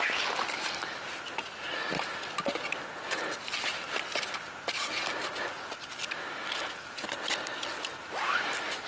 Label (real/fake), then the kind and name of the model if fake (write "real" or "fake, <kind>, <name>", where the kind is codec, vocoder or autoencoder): real